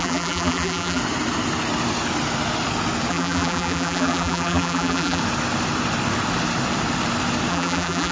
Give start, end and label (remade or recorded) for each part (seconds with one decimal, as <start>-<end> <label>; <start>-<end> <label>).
0.0-1.0 remade; 1.0-3.1 recorded; 3.1-5.2 remade; 5.2-7.5 recorded; 7.5-8.1 remade